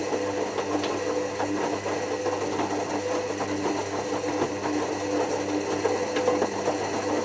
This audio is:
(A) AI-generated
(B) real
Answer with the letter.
B